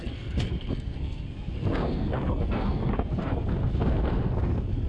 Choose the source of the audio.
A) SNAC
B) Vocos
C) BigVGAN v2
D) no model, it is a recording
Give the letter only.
A